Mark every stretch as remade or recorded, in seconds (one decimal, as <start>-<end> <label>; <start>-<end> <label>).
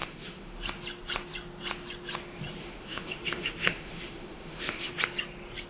0.0-0.6 remade; 0.6-2.6 recorded; 2.6-4.9 remade; 4.9-5.7 recorded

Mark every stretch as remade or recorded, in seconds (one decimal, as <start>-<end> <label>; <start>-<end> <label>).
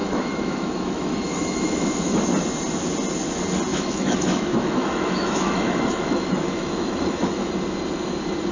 0.0-2.2 remade; 2.2-3.7 recorded; 3.7-7.5 remade; 7.5-8.5 recorded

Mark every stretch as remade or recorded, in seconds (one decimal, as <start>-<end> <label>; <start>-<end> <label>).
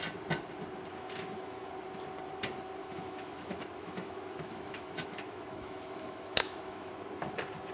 0.0-0.9 recorded; 0.9-1.7 remade; 1.7-2.8 recorded; 2.8-6.9 remade; 6.9-7.7 recorded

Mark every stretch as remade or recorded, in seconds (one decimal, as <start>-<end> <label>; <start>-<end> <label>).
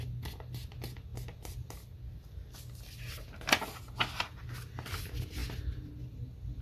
0.0-6.6 recorded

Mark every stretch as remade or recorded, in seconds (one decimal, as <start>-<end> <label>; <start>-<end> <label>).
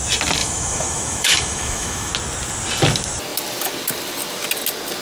0.0-0.4 recorded; 0.4-2.1 remade; 2.1-5.0 recorded